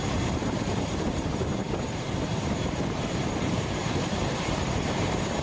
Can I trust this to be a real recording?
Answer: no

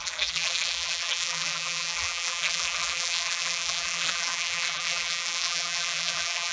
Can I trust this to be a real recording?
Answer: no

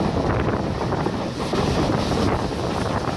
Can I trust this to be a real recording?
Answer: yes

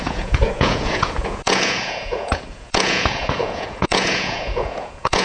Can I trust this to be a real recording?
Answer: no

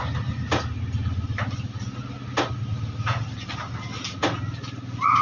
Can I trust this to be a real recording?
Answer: yes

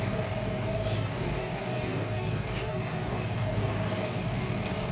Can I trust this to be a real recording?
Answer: no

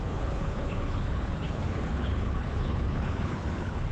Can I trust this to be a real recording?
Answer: no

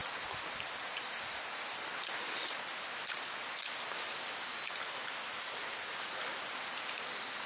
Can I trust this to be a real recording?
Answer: yes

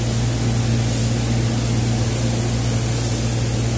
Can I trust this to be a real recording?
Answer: yes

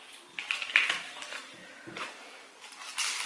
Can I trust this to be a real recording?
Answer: no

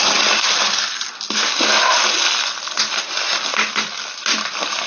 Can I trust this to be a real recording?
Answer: yes